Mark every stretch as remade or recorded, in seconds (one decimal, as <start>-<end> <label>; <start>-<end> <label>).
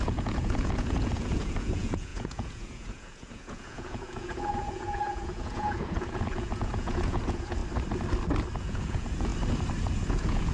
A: 0.0-7.6 remade; 7.6-8.6 recorded; 8.6-9.3 remade; 9.3-9.8 recorded; 9.8-10.5 remade